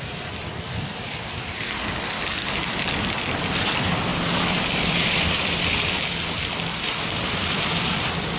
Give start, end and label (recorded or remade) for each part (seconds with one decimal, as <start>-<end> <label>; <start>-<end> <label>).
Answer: 0.0-8.4 remade